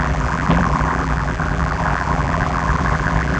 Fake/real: fake